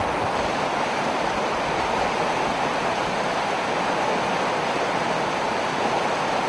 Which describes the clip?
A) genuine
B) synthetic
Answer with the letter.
A